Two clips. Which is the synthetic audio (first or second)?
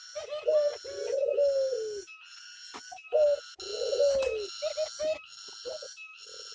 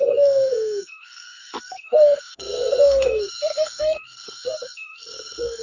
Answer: second